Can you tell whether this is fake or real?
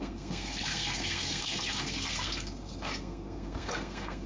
fake